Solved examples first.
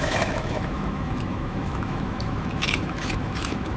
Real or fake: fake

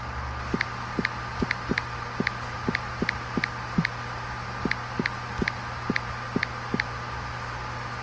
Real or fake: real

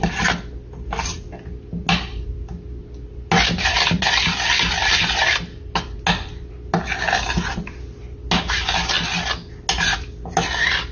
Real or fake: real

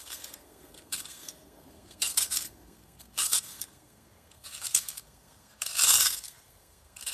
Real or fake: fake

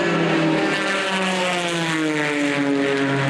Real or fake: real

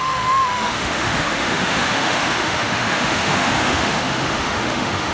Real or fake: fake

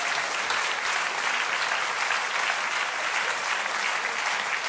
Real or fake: real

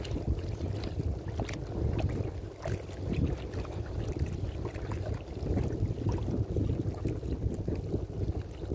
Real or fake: real